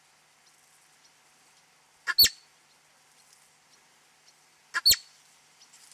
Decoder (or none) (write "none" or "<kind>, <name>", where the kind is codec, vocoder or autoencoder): none